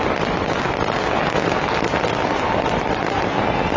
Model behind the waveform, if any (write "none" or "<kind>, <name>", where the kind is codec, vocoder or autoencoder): none